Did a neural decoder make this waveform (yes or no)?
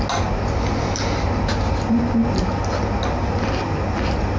no